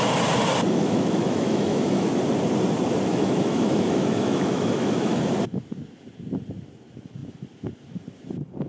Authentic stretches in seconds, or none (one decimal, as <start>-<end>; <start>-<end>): 0.0-0.8; 2.1-3.1; 5.2-8.7